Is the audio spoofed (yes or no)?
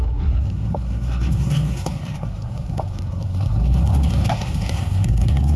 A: yes